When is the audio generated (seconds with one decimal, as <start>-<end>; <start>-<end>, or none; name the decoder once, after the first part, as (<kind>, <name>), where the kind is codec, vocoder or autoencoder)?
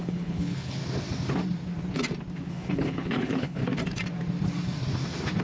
0.0-0.8 (codec, HILCodec); 2.5-3.6